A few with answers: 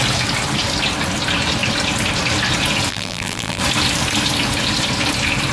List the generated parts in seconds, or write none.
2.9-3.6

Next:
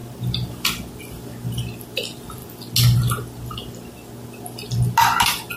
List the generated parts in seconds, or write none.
none

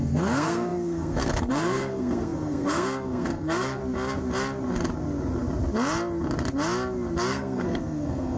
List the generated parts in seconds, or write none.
0.0-3.8; 7.3-8.4

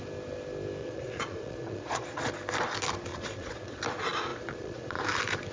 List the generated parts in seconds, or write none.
0.8-2.3; 3.1-3.8; 4.3-5.0

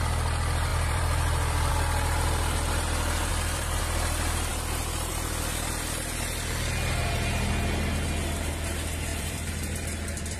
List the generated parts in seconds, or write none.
0.7-1.7; 3.3-3.8; 9.1-10.4

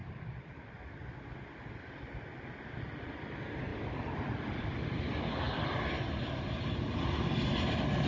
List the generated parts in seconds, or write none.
none

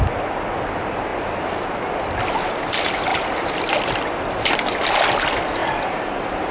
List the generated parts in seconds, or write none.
3.1-3.6; 5.6-6.5

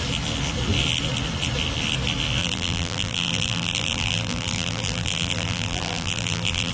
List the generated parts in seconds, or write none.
2.4-6.7